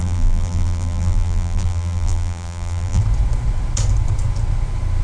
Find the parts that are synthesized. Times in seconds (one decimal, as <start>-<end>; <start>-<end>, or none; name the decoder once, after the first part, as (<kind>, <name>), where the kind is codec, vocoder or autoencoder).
0.0-3.0 (vocoder, BigVGAN v2)